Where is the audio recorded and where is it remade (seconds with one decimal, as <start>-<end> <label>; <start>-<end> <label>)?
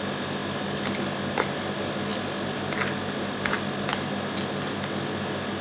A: 0.0-5.6 recorded